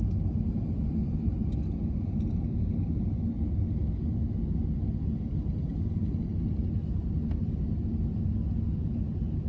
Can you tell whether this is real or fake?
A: real